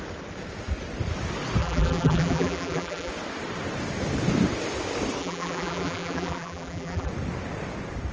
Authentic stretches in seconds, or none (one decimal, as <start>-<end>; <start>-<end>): 0.0-1.6; 3.1-5.2; 7.1-8.1